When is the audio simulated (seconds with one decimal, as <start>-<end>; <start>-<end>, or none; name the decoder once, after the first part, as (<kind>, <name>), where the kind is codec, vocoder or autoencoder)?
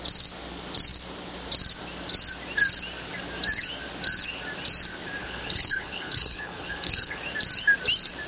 5.2-7.2 (codec, HILCodec)